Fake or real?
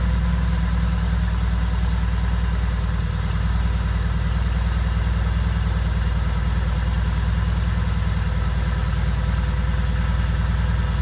real